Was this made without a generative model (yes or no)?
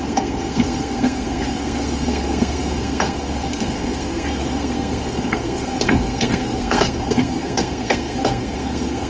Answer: no